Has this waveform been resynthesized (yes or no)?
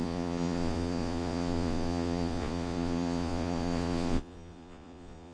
yes